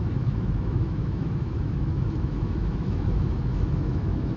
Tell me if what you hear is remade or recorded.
remade